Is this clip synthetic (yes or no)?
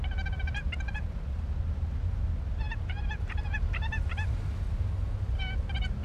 no